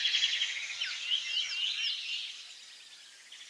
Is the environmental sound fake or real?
real